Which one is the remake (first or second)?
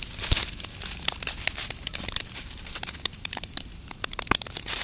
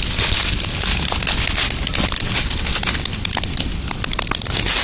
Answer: first